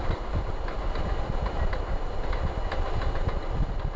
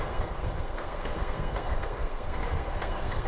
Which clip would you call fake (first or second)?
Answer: second